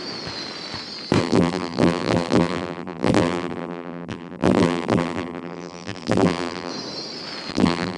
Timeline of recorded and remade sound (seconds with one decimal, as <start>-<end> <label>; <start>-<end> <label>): 0.0-1.2 recorded; 1.2-6.7 remade; 6.7-7.5 recorded; 7.5-8.0 remade